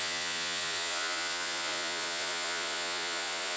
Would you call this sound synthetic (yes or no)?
yes